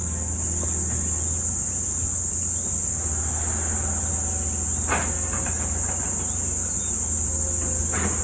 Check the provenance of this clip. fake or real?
real